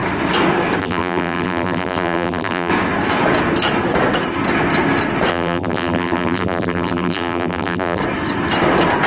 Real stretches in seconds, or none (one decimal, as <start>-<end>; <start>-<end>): 0.0-0.8; 2.7-5.3; 8.0-9.1

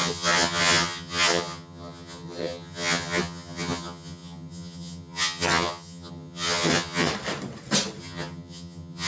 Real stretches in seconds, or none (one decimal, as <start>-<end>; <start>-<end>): 7.1-8.0

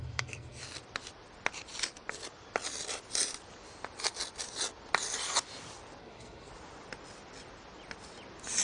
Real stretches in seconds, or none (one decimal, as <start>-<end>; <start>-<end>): 0.6-6.0; 6.5-8.6

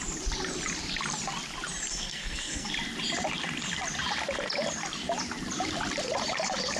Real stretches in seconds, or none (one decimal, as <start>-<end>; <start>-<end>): 0.0-1.9; 2.7-6.8

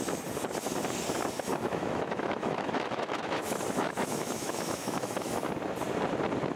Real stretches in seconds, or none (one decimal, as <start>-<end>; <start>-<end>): 0.0-1.5; 5.5-6.6

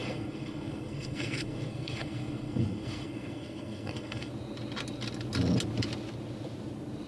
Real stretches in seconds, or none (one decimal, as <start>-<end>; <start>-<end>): 4.3-7.1

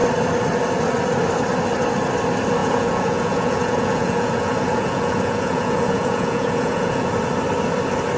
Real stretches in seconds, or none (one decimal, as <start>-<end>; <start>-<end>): 0.0-2.6; 7.1-8.2